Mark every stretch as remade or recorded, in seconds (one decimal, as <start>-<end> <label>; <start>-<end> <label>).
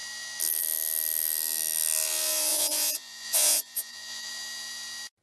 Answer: 0.0-2.5 recorded; 2.5-4.3 remade; 4.3-5.2 recorded